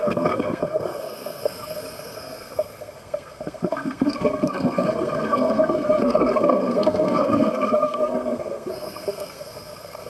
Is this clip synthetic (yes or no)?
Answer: yes